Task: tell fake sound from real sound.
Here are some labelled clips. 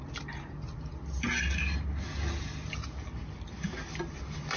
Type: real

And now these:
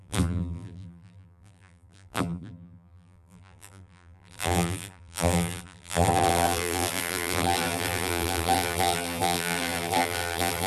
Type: fake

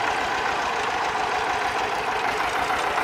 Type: real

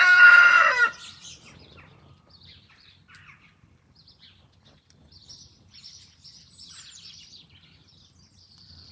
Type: fake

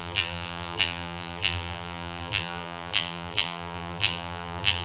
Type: fake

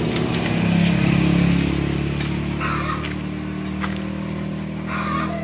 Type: real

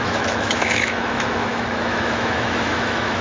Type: fake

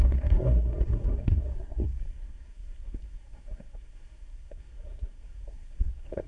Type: fake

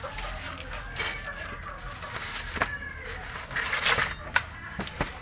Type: real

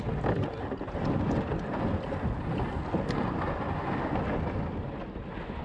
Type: real